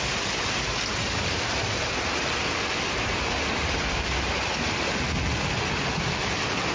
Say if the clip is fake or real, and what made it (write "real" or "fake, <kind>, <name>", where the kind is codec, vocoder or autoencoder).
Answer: real